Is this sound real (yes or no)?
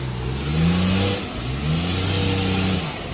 yes